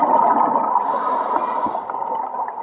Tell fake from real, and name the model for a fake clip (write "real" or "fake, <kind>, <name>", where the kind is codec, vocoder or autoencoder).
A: real